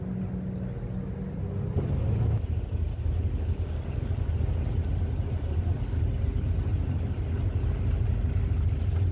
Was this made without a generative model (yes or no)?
yes